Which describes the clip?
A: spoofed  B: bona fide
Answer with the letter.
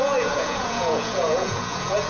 A